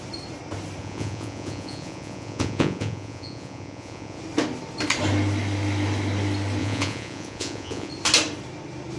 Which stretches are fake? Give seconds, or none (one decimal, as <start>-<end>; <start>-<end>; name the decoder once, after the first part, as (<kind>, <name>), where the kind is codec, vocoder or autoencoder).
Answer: 0.8-4.2 (vocoder, Vocos); 6.6-7.9